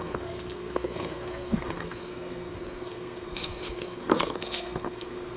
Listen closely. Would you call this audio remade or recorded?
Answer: remade